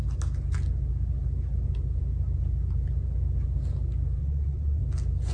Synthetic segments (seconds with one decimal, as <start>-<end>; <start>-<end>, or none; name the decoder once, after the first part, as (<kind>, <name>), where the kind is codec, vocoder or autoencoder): 4.2-4.8 (vocoder, WaveNeXt)